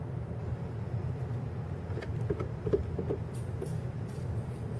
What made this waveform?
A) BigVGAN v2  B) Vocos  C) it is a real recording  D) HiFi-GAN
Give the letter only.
C